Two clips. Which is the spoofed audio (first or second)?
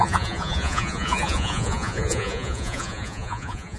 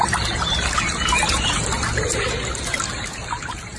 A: first